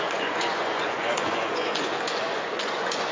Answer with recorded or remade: remade